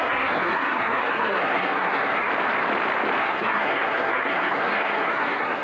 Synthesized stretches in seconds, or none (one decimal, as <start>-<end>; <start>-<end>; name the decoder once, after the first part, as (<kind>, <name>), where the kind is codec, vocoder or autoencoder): 0.0-2.3 (codec, SNAC); 3.2-5.6